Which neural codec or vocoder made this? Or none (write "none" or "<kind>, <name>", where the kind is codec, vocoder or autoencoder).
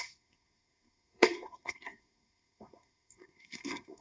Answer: codec, SNAC